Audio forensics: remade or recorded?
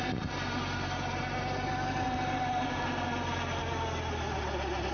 recorded